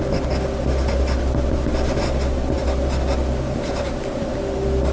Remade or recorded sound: recorded